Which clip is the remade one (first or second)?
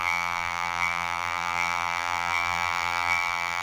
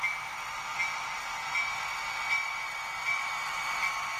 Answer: first